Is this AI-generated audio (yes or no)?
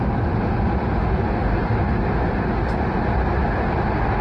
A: no